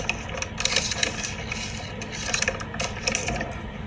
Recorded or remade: recorded